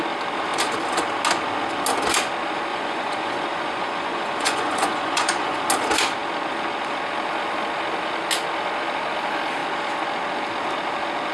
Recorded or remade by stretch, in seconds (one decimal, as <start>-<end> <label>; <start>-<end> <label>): 0.0-2.7 recorded; 2.7-5.7 remade; 5.7-11.3 recorded